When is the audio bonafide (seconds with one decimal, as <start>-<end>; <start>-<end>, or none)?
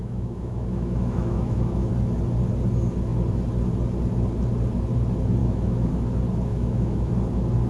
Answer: 1.9-5.4; 5.9-6.5; 7.1-7.7